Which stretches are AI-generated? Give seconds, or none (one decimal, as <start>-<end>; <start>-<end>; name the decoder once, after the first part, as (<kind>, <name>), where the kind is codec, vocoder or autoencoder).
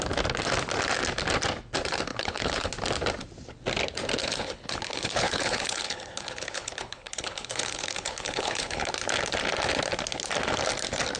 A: 2.1-2.7 (codec, HILCodec); 4.2-8.9